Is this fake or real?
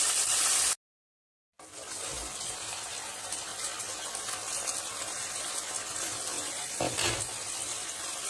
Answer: real